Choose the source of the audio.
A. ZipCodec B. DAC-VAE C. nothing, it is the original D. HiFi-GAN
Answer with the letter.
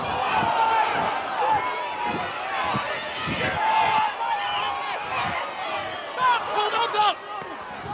C